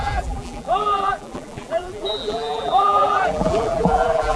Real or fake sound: fake